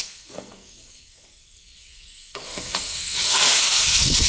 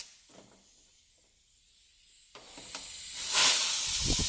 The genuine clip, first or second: second